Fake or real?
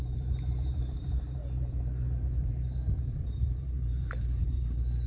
fake